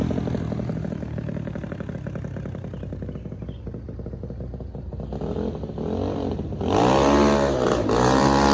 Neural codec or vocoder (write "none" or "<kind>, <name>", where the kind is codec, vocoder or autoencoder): none